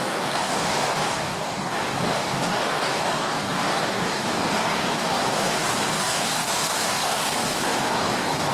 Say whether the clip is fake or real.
fake